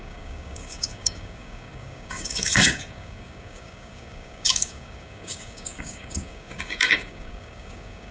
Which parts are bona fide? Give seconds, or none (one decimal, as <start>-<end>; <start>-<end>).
none